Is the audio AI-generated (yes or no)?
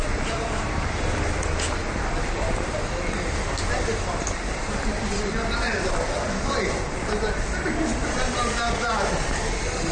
no